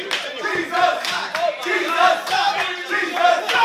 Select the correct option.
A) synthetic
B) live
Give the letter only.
A